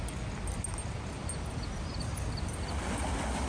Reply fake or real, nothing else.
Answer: real